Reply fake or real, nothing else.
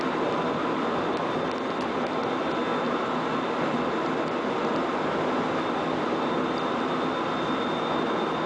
real